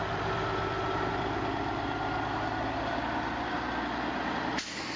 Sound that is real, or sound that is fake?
real